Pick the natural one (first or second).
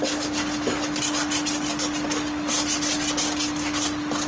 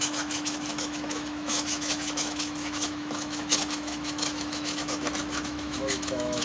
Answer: first